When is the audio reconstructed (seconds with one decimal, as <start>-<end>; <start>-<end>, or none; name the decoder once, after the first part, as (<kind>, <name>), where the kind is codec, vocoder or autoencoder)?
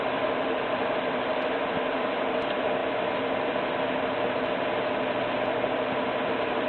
0.0-6.7 (vocoder, BigVGAN v2)